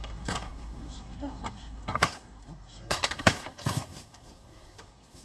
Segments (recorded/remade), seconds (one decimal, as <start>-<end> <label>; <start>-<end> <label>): 0.0-5.2 remade